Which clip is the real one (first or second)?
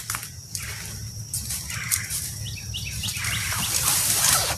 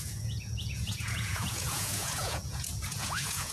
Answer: first